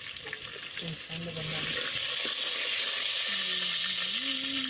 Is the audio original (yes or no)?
yes